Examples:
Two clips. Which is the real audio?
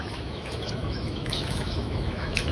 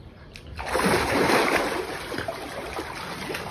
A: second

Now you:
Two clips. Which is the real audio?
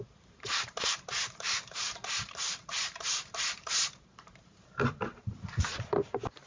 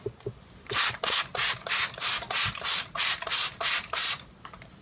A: second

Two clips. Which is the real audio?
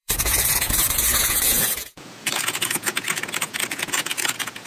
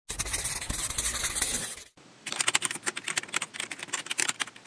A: second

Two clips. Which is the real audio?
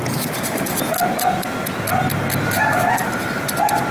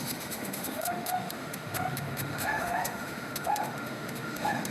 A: first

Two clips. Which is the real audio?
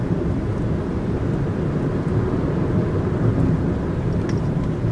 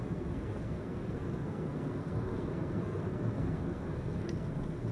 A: first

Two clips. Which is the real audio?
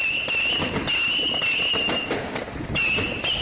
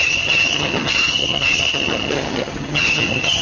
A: first